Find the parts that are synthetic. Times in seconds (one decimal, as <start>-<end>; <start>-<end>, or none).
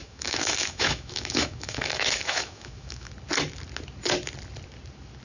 0.0-3.1